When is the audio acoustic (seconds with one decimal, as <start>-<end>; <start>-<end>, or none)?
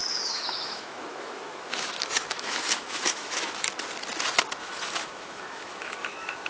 3.7-4.6